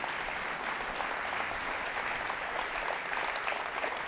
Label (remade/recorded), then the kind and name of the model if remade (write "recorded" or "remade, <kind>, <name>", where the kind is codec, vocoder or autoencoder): recorded